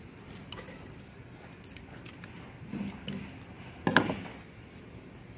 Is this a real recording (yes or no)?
yes